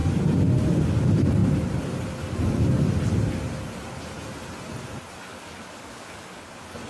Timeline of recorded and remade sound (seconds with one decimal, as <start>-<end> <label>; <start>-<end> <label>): 0.0-5.3 recorded; 5.3-6.5 remade; 6.5-6.9 recorded